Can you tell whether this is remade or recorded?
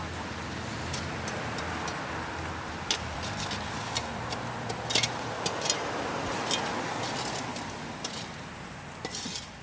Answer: recorded